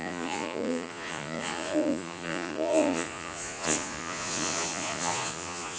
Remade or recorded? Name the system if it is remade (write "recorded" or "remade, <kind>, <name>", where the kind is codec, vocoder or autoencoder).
remade, vocoder, Vocos